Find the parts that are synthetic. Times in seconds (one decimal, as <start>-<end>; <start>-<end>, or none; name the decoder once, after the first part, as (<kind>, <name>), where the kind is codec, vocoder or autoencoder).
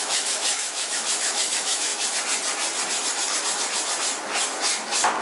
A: 0.0-1.9 (autoencoder, DAC-VAE)